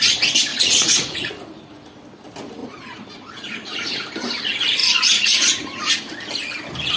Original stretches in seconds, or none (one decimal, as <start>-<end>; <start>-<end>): 0.0-0.5; 1.3-2.6; 3.9-4.8; 5.9-7.0